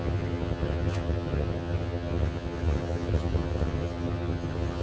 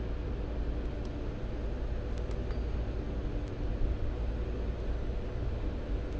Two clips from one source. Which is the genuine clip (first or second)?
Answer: second